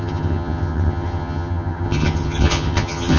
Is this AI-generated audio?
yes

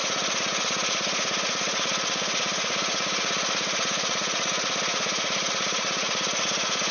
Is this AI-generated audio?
yes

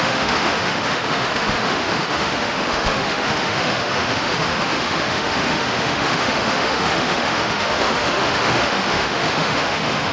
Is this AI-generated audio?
yes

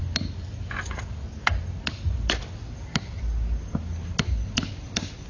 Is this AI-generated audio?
no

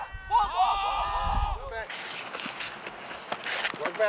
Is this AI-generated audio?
no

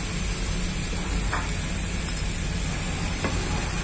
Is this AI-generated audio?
no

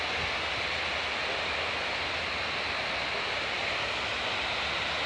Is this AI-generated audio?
no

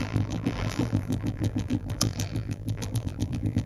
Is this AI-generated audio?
yes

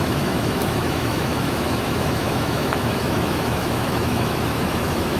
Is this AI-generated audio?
yes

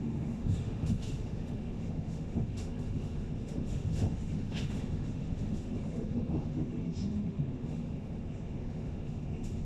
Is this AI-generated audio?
yes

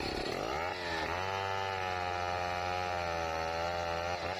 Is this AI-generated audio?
no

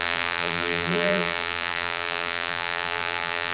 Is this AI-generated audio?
yes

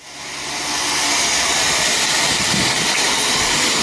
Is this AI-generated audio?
no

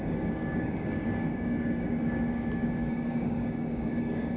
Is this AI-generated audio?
yes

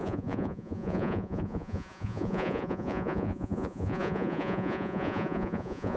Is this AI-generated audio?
yes